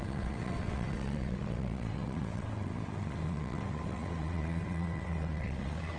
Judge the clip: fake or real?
fake